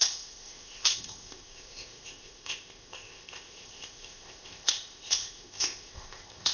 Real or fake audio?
fake